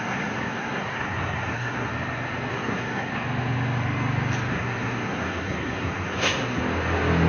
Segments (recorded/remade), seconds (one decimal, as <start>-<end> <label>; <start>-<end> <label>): 0.0-1.9 remade; 1.9-2.5 recorded; 2.5-3.1 remade; 3.1-4.5 recorded; 4.5-6.6 remade; 6.6-7.3 recorded